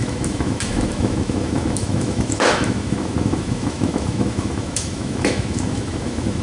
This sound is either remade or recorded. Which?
remade